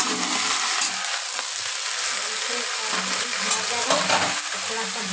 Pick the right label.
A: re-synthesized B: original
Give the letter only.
B